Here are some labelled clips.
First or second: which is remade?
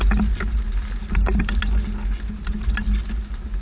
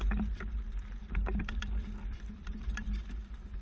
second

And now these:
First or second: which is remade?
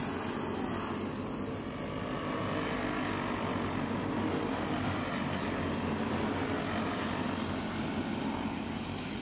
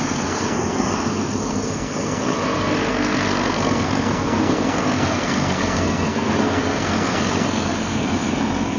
second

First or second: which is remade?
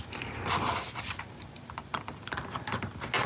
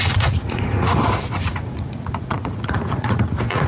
second